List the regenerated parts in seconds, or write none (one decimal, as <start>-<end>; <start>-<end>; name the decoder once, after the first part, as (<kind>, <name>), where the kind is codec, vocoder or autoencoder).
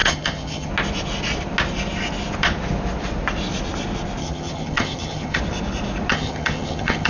0.0-0.7 (vocoder, HiFi-GAN); 4.2-5.4; 6.1-7.1